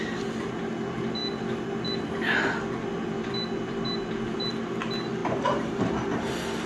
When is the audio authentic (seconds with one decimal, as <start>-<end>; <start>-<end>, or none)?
0.0-6.7

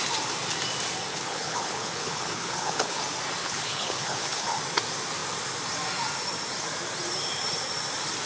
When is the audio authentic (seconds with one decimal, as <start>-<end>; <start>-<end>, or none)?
0.0-1.1; 3.0-3.4; 4.6-8.3